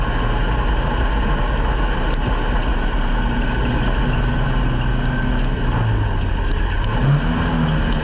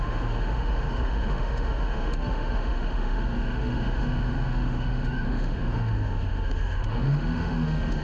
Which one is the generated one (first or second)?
second